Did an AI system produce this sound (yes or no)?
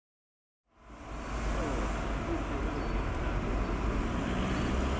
no